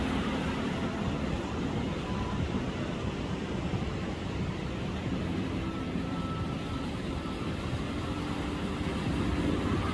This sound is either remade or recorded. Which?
remade